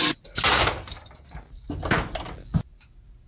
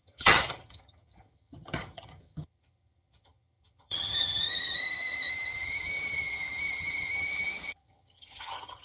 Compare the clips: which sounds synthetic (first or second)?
second